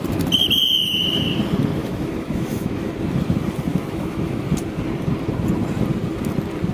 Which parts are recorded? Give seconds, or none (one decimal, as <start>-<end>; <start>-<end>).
0.0-1.8; 2.9-3.7; 4.4-6.7